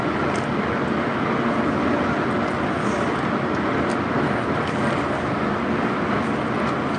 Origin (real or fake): real